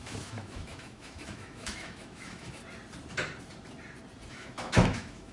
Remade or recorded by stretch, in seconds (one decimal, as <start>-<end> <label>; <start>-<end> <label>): 0.0-2.6 remade; 2.6-4.3 recorded; 4.3-5.3 remade